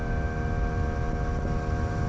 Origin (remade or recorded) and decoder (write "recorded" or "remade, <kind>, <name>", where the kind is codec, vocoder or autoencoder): recorded